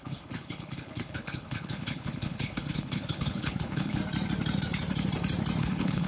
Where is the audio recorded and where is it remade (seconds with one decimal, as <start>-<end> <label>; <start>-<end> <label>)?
0.0-4.0 remade; 4.0-5.6 recorded; 5.6-6.1 remade